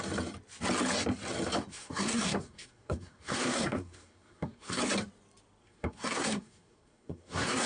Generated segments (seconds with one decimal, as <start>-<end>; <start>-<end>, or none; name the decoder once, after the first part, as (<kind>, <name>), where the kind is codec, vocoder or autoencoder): 1.7-4.8 (codec, SNAC); 5.6-7.7